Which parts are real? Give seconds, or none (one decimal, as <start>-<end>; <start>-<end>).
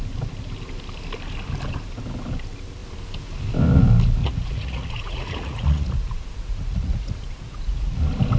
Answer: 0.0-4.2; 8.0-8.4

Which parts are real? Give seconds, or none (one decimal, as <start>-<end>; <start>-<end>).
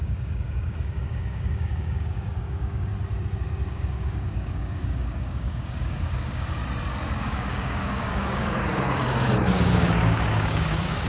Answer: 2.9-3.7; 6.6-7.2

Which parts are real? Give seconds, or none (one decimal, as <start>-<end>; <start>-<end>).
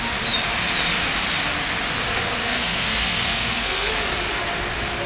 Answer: 0.0-2.4; 3.9-5.1